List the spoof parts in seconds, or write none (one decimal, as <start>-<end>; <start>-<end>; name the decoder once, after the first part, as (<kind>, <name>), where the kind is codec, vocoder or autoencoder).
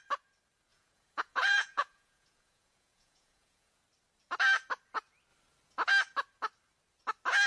0.7-3.8 (vocoder, Vocos)